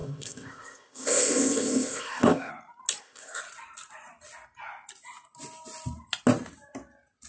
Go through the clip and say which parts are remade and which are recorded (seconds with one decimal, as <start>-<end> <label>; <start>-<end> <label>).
0.0-2.5 remade; 2.5-3.0 recorded; 3.0-3.4 remade; 3.4-7.3 recorded